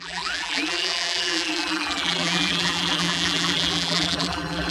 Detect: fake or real fake